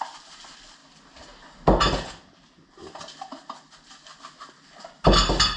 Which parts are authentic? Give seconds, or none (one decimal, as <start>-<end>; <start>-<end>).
0.0-5.6